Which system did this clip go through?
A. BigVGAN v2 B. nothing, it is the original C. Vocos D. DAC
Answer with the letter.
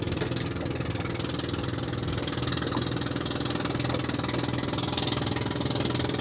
B